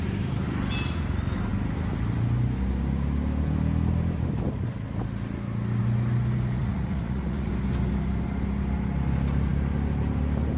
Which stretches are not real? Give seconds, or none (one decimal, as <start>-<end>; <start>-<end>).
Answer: 6.6-7.5